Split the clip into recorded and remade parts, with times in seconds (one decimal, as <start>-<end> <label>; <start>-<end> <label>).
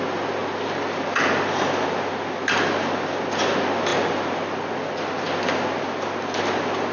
0.0-6.9 recorded